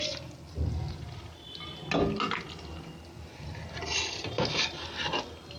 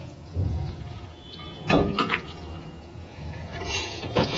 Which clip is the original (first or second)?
first